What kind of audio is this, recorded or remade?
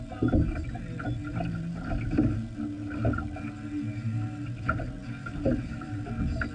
recorded